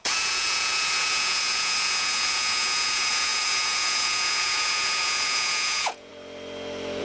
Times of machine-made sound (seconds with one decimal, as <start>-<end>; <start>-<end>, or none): 0.0-6.1

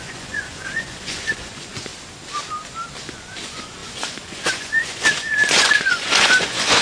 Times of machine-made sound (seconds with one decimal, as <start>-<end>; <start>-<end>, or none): 0.0-1.9; 3.0-6.8

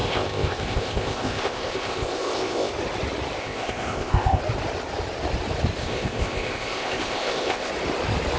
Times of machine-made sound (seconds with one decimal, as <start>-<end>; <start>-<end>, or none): 0.0-2.7; 3.4-4.4; 5.8-7.7